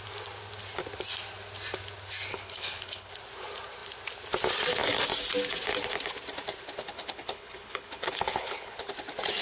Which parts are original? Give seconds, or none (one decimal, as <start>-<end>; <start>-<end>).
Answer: 0.0-2.3; 3.1-6.8; 8.9-9.4